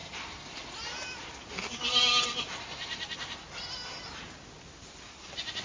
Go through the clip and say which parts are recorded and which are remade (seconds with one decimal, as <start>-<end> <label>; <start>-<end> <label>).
0.0-5.6 recorded